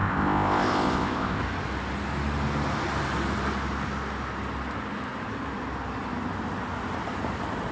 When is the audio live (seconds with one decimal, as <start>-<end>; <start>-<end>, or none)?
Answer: 1.4-7.7